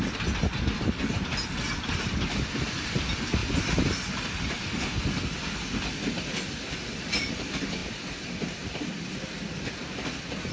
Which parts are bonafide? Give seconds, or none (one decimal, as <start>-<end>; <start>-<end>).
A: 0.0-10.5